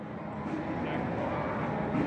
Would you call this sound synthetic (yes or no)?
no